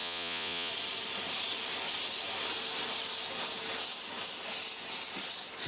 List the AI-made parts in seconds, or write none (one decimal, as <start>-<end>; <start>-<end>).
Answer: 0.0-0.7